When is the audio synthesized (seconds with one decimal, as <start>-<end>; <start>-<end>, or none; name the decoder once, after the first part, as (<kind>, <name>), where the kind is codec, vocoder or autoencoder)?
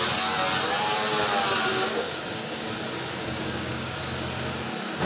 1.7-2.7 (codec, DAC); 3.2-4.0